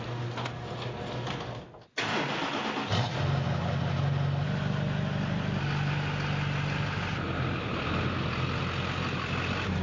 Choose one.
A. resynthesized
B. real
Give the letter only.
B